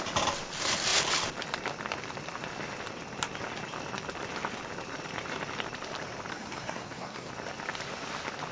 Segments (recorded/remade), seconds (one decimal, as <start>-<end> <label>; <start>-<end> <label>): 0.0-6.3 recorded; 6.3-7.3 remade; 7.3-8.5 recorded